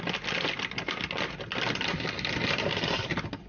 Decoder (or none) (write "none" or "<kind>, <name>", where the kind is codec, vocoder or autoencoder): none